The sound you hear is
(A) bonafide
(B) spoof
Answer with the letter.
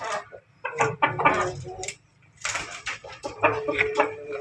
B